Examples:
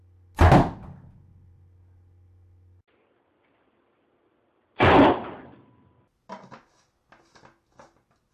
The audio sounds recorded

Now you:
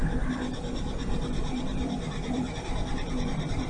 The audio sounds remade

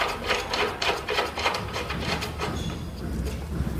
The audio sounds recorded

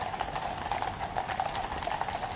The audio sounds recorded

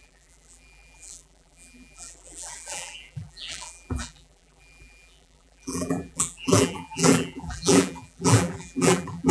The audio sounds remade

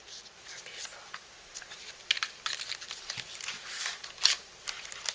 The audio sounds recorded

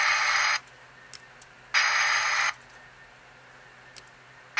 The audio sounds recorded